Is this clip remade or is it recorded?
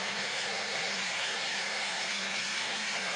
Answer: remade